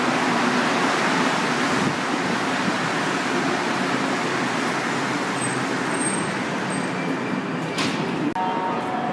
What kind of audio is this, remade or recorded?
recorded